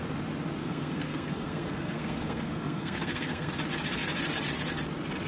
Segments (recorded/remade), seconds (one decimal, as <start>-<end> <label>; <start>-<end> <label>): 0.0-0.6 recorded; 0.6-3.5 remade; 3.5-5.3 recorded